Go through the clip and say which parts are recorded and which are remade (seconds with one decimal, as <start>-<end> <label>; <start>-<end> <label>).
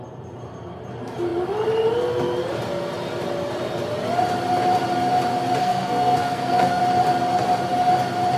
0.0-5.6 recorded; 5.6-6.8 remade; 6.8-8.4 recorded